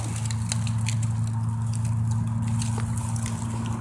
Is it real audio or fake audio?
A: real